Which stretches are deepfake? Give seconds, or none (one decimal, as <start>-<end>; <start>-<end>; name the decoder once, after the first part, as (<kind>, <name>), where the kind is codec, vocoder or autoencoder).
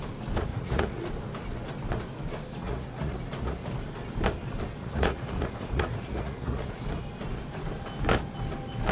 0.5-1.1 (vocoder, Vocos); 2.6-3.7; 4.8-6.8